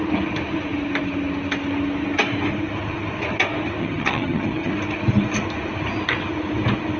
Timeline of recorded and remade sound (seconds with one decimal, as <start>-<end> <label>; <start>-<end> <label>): 0.0-3.8 recorded; 3.8-4.7 remade; 4.7-7.0 recorded